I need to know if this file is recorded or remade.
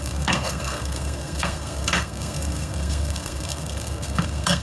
remade